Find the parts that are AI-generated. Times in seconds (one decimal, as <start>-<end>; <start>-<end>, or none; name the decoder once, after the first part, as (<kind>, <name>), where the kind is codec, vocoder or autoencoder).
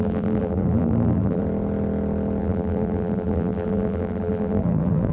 0.0-1.4 (vocoder, BigVGAN v2); 2.4-5.1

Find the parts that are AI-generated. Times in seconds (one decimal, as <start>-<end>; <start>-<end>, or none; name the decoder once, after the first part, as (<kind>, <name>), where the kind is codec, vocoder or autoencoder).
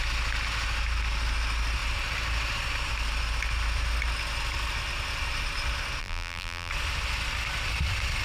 6.0-6.7 (vocoder, BigVGAN v2)